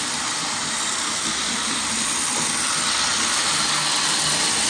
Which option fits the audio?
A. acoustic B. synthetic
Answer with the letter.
A